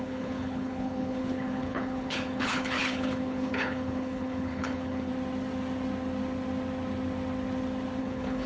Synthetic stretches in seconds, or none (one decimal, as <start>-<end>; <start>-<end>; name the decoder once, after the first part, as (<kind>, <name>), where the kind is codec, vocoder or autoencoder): 0.0-5.1 (codec, HILCodec); 8.0-8.5